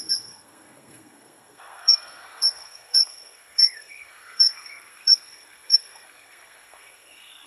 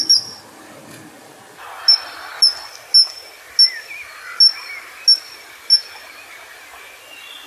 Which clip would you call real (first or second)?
second